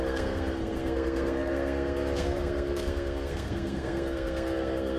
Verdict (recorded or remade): remade